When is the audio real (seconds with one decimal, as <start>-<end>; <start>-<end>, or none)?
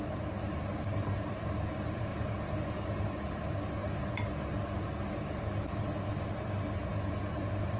2.1-3.0; 3.8-6.3